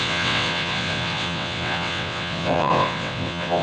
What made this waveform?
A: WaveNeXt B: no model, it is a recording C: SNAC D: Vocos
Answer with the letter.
A